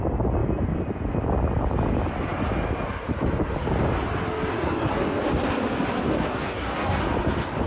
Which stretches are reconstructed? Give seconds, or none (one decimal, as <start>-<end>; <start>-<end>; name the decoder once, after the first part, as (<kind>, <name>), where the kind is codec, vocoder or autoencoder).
4.5-5.2 (codec, DAC); 6.2-7.0

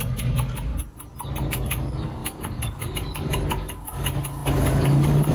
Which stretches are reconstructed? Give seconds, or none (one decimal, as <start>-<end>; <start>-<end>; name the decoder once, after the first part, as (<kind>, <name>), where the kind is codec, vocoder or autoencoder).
0.0-0.7 (codec, DAC); 1.5-5.3

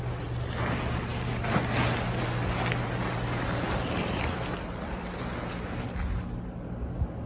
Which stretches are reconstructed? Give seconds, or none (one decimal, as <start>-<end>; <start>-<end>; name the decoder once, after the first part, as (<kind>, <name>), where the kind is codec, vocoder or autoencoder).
none

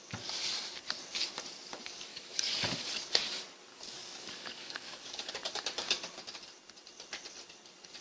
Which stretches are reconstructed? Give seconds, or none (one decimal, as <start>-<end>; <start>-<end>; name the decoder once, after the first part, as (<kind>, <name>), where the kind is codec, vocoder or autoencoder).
2.1-2.9 (codec, DAC); 3.7-5.3